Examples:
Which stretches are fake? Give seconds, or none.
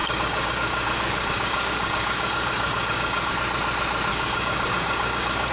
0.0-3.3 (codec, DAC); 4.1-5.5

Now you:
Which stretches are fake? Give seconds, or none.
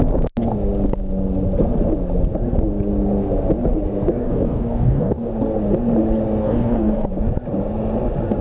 4.2-5.3 (codec, DAC); 6.4-7.1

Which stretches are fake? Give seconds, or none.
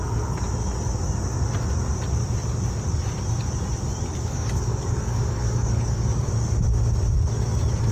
4.1-6.3 (codec, DAC)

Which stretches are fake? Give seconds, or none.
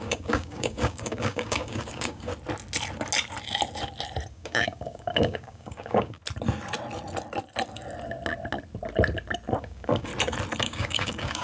0.0-2.3 (codec, DAC); 4.3-6.2; 9.6-10.1; 10.6-11.4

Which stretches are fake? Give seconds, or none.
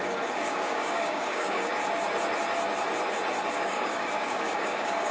0.0-1.7 (codec, DAC); 3.5-5.1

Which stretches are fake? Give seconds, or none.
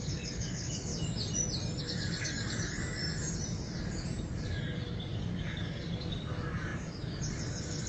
0.0-0.9 (codec, DAC); 1.8-3.0; 3.8-7.9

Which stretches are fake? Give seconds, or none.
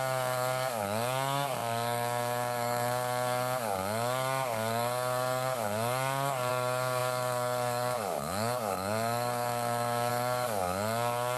0.0-11.4 (codec, DAC)